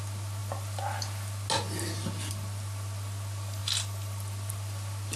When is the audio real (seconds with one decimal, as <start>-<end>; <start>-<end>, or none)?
0.0-5.2